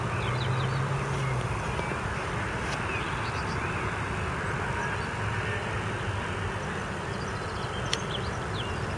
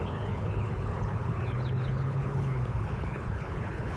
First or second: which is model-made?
second